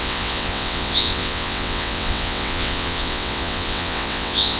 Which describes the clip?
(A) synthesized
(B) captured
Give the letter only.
A